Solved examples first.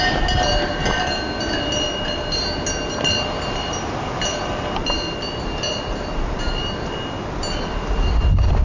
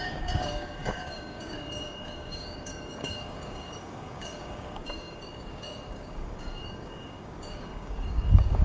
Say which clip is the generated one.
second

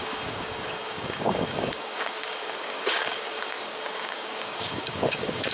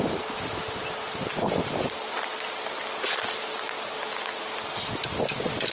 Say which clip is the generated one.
first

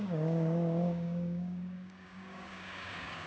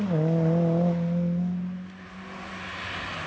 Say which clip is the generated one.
first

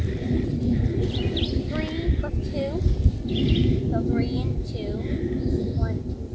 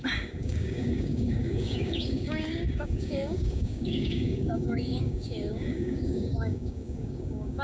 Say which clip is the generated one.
second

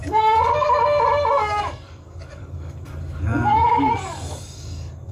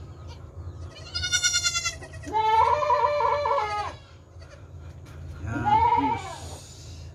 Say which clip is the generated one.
first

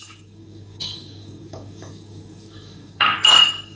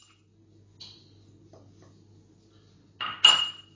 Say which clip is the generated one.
first